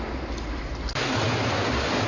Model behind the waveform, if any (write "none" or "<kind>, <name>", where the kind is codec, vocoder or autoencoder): none